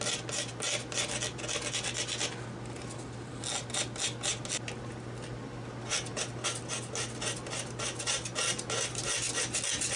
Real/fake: real